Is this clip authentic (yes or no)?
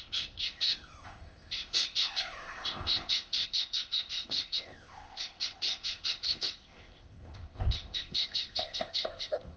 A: no